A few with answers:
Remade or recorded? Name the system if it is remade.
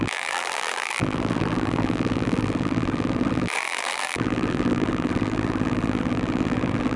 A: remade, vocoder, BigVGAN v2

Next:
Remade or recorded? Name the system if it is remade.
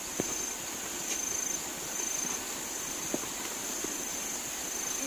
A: recorded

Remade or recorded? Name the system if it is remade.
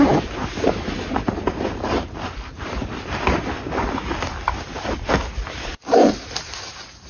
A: recorded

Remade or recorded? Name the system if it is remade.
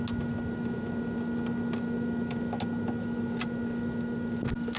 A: recorded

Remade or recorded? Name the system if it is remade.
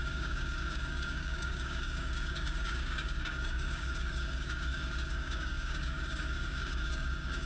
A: remade, codec, DAC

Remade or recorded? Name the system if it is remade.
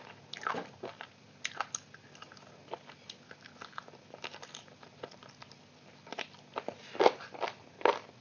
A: recorded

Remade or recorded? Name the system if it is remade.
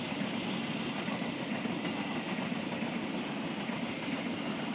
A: recorded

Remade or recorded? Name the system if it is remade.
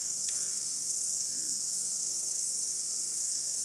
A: remade, codec, SNAC